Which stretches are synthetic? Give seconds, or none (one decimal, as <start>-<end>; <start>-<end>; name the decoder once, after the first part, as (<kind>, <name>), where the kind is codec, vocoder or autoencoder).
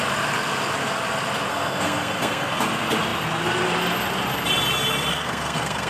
1.5-2.7 (codec, SNAC); 5.1-5.9